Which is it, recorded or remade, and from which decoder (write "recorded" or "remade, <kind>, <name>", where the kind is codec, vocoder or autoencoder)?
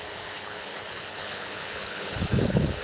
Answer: remade, codec, HILCodec